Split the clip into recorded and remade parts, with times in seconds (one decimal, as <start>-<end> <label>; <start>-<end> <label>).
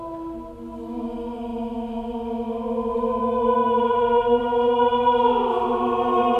0.0-3.6 recorded; 3.6-4.4 remade; 4.4-6.4 recorded